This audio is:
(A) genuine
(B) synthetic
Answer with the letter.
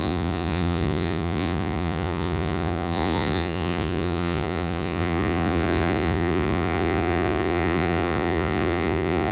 B